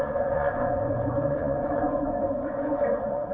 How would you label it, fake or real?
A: fake